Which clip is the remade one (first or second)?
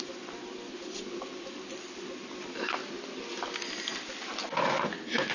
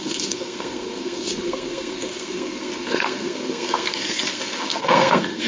second